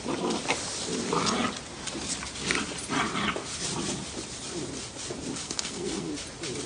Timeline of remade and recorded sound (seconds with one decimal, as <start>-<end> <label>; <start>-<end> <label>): 0.0-5.4 recorded; 5.4-6.1 remade; 6.1-6.7 recorded